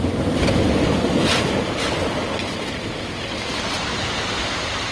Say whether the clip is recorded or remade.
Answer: recorded